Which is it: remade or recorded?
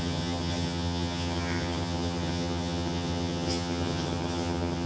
remade